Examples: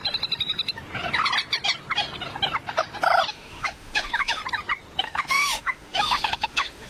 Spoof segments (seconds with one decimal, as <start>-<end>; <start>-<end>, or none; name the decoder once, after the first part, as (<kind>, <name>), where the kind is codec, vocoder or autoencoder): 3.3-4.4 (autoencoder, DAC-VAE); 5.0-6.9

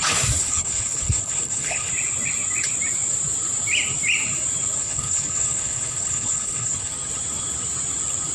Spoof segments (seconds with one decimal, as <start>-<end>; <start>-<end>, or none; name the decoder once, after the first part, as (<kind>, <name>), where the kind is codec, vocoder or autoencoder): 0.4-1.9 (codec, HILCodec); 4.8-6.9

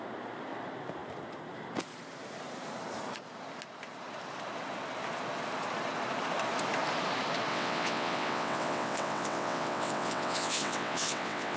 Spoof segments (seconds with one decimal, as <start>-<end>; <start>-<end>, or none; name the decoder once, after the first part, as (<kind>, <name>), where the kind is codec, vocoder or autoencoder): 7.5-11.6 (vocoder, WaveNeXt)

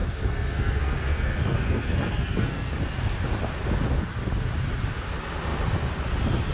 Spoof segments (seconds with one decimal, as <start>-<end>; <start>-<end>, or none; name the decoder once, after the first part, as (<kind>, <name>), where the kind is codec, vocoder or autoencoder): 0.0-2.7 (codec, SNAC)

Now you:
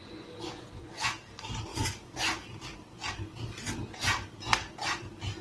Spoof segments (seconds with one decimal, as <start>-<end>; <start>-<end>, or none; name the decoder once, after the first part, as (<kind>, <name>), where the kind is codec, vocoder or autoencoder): 0.0-1.1 (vocoder, Vocos); 1.7-2.2

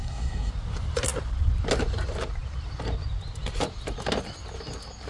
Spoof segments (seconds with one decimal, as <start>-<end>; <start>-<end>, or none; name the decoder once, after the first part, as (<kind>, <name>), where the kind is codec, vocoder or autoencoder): 0.0-0.5 (codec, SNAC)

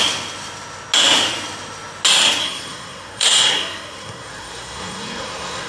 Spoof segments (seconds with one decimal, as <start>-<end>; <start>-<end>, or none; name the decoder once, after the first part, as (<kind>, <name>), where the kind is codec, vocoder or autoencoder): 2.4-5.7 (codec, SNAC)